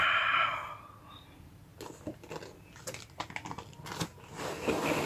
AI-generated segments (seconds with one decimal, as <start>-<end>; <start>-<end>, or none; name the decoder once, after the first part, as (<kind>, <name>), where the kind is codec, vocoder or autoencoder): none